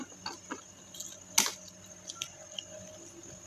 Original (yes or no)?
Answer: yes